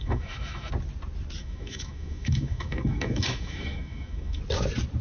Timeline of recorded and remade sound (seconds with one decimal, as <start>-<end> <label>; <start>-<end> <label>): 0.0-0.7 remade; 0.7-1.4 recorded; 1.4-4.4 remade; 4.4-5.0 recorded